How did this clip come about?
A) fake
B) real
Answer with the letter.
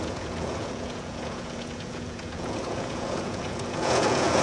A